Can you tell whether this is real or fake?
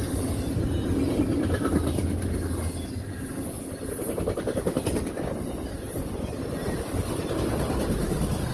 real